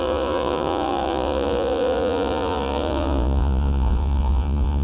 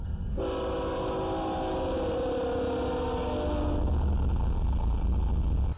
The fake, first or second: first